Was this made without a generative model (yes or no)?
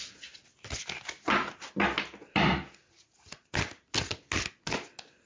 yes